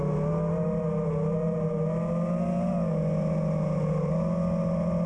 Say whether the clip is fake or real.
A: real